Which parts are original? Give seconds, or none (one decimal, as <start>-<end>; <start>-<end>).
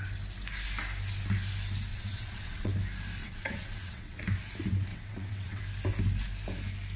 0.0-1.9; 2.7-3.2; 4.2-4.9; 5.6-7.0